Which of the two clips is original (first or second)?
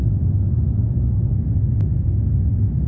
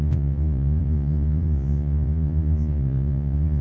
first